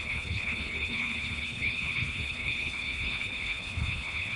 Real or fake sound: fake